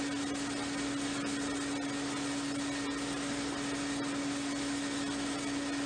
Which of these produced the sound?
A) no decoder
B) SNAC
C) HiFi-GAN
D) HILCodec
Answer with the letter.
A